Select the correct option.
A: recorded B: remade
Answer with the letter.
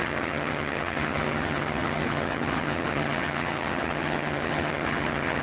B